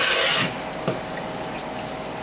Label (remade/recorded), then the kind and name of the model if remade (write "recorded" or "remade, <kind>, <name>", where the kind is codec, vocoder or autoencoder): recorded